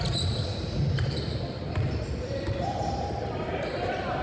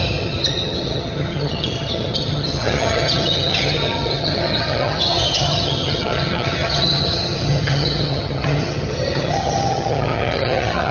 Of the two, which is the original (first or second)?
first